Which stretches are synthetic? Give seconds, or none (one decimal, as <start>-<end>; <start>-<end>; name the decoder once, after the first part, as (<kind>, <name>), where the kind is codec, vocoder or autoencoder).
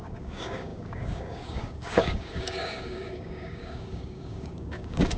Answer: 0.0-5.2 (codec, DAC)